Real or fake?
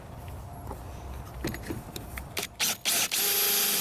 real